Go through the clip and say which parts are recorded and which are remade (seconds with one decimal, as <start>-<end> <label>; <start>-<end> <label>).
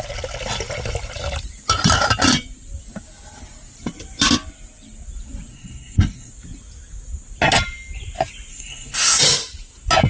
0.0-5.5 recorded; 5.5-6.3 remade; 6.3-8.5 recorded; 8.5-9.2 remade; 9.2-10.1 recorded